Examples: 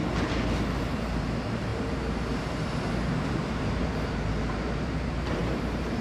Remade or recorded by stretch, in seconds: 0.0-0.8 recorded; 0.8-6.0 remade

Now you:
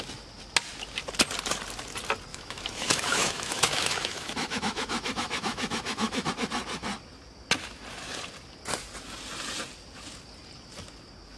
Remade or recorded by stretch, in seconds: 0.0-2.3 recorded; 2.3-6.3 remade; 6.3-11.4 recorded

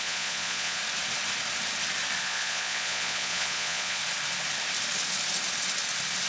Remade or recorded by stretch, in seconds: 0.0-0.8 remade; 0.8-2.2 recorded; 2.2-4.0 remade; 4.0-6.3 recorded